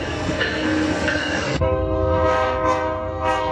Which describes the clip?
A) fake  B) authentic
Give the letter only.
A